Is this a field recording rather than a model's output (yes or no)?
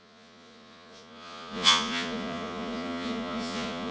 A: no